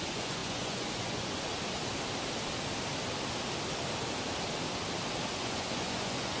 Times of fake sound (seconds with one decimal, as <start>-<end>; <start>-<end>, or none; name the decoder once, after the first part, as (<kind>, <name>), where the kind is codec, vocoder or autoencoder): 0.0-1.5 (vocoder, Vocos); 5.3-6.4

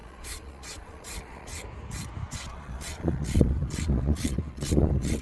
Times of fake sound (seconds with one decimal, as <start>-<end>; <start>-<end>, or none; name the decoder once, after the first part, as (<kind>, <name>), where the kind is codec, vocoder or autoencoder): 0.0-1.5 (vocoder, Vocos); 2.3-5.2

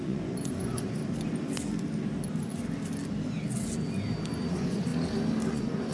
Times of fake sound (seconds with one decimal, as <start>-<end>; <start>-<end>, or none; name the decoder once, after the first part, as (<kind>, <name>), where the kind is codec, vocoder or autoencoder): 0.0-1.0 (vocoder, Vocos); 4.5-4.9; 5.5-5.9

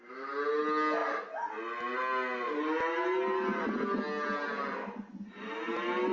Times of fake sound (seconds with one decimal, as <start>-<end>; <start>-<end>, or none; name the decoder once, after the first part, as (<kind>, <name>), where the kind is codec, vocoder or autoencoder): none

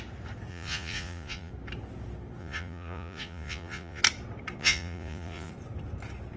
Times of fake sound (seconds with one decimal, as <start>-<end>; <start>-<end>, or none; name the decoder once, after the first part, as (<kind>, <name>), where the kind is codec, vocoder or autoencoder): 0.5-1.5 (vocoder, Vocos); 2.4-4.0; 4.6-5.5

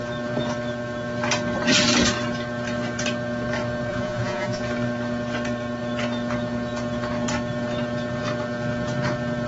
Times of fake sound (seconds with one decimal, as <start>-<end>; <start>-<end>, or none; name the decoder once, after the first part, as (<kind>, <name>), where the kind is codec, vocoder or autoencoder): 3.9-4.6 (vocoder, Vocos)

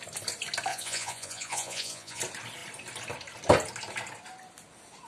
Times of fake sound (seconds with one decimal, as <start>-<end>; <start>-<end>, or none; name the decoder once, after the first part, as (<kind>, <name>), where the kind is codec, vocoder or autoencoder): 0.7-2.2 (vocoder, Vocos)

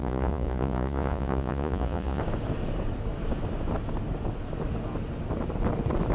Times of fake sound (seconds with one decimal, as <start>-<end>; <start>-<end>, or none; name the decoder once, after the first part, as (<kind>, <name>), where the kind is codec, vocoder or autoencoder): 0.0-2.2 (vocoder, Vocos)